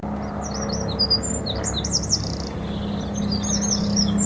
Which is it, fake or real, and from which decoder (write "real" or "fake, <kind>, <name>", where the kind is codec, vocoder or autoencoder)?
real